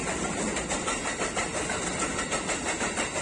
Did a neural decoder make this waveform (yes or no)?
no